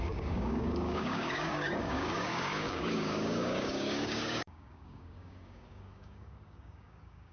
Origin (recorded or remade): remade